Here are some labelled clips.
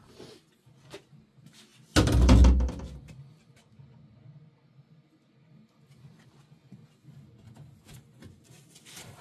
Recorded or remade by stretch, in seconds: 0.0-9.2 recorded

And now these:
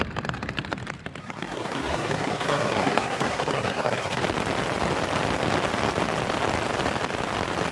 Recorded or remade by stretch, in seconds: 0.0-1.2 recorded; 1.2-4.2 remade; 4.2-7.7 recorded